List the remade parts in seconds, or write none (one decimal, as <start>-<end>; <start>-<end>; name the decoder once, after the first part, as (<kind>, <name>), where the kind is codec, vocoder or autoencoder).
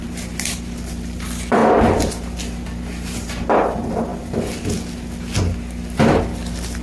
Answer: 0.0-1.6 (vocoder, BigVGAN v2); 2.4-4.1; 5.4-6.8